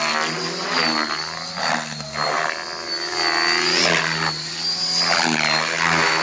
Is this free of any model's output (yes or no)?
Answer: yes